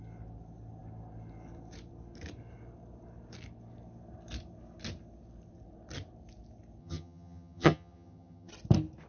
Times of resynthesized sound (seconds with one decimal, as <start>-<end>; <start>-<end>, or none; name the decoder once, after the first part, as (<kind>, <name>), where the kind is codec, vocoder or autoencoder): 6.8-8.5 (vocoder, HiFi-GAN)